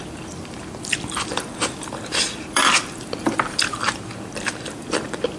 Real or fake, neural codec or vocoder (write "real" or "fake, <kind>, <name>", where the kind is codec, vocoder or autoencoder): fake, vocoder, BigVGAN v2